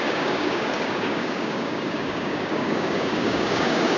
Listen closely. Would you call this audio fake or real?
fake